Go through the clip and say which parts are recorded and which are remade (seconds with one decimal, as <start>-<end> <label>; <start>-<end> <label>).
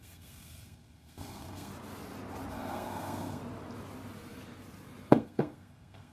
0.0-1.7 remade; 1.7-2.5 recorded; 2.5-3.4 remade; 3.4-5.1 recorded; 5.1-6.1 remade